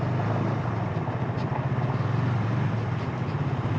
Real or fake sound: real